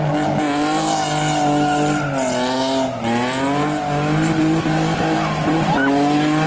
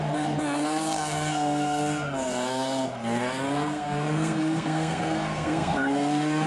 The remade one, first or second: second